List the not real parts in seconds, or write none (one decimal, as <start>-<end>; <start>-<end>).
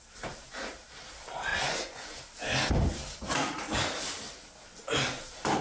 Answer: 1.5-2.2